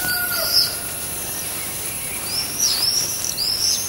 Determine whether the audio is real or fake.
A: fake